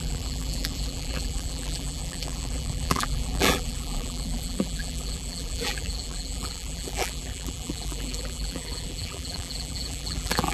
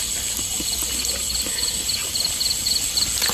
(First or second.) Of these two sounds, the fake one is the first